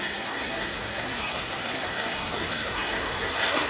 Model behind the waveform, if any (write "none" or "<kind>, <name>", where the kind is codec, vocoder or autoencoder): codec, SNAC